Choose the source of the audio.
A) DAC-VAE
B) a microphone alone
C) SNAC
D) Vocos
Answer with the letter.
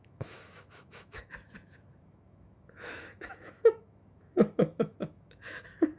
A